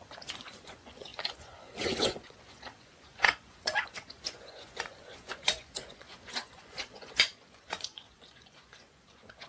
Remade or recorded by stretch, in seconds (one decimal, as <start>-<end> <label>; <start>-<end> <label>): 0.0-9.5 remade